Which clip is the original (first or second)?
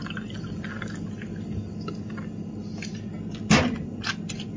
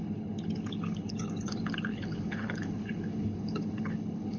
first